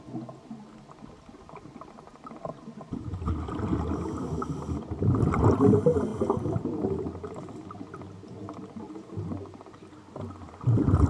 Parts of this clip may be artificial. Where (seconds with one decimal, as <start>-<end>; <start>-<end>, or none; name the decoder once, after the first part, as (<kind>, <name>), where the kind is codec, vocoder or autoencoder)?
none